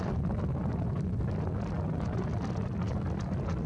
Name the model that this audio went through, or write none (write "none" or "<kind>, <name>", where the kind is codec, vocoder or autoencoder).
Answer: none